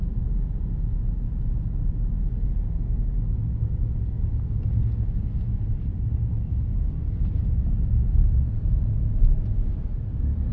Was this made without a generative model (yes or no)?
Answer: yes